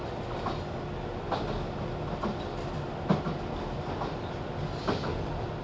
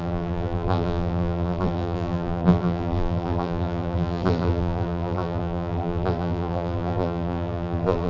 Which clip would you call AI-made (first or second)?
second